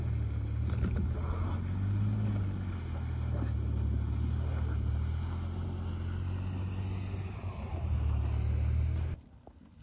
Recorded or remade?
recorded